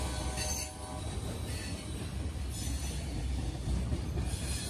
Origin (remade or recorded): recorded